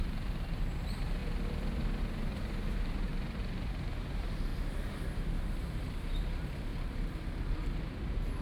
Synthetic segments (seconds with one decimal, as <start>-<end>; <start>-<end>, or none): 0.0-1.2; 2.0-4.5; 5.3-6.7; 7.4-8.4